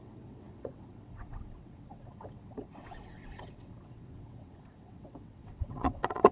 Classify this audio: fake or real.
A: fake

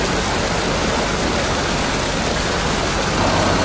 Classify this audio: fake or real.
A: real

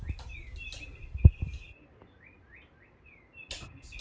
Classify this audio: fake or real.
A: real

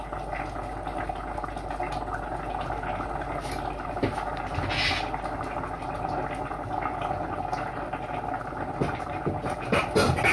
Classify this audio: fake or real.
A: real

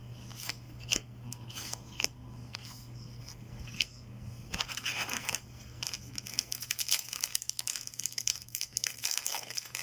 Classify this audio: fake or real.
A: fake